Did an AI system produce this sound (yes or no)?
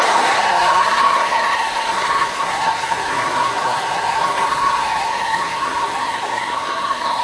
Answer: yes